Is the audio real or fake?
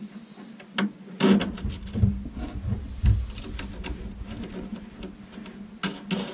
real